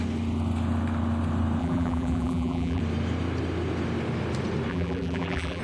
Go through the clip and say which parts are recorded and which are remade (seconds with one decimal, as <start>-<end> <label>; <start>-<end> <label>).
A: 0.0-1.6 recorded; 1.6-2.8 remade; 2.8-4.7 recorded; 4.7-5.6 remade